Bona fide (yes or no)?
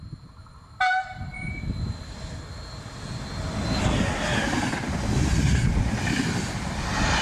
yes